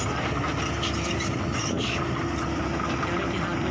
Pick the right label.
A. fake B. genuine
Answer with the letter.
B